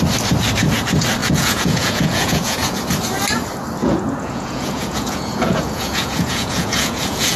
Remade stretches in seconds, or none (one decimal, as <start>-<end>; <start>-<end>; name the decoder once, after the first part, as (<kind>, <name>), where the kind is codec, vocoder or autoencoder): 1.2-2.8 (vocoder, Vocos); 3.8-7.4